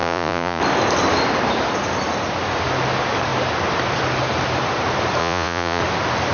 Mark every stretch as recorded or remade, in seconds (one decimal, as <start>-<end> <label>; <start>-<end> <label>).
0.0-0.6 remade; 0.6-5.2 recorded; 5.2-5.8 remade; 5.8-6.3 recorded